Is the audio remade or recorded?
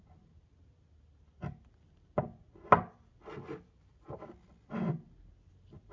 recorded